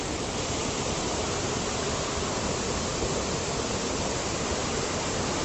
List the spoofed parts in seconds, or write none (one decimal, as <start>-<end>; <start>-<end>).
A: 0.0-1.7; 3.8-4.9